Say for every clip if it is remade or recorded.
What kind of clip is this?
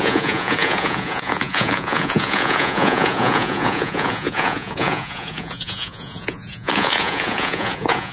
remade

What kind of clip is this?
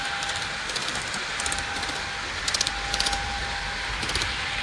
remade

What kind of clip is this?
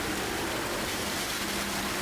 remade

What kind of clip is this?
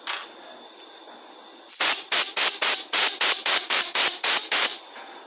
recorded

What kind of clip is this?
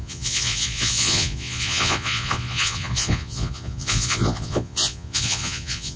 remade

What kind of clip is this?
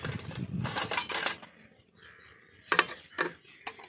recorded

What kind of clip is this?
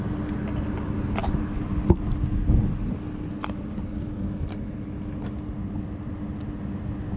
recorded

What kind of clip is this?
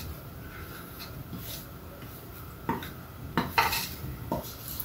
recorded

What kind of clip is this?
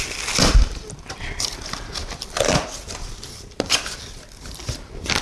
remade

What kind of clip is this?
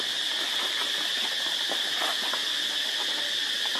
recorded